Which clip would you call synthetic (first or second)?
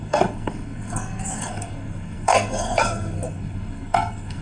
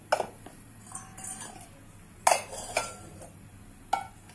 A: first